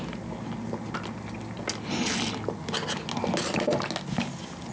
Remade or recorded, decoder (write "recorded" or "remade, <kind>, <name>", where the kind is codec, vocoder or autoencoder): recorded